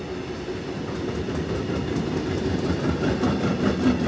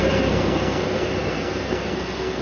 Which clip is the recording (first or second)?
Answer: first